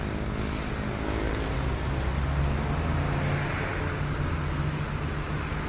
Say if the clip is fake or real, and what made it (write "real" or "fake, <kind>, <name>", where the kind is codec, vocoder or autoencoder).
real